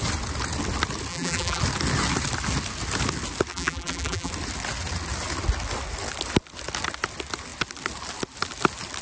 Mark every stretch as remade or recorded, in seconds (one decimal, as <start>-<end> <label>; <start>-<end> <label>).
0.0-1.1 recorded; 1.1-1.6 remade; 1.6-3.5 recorded; 3.5-4.3 remade; 4.3-9.0 recorded